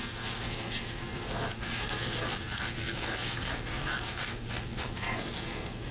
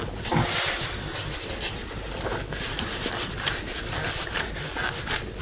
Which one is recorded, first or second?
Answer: second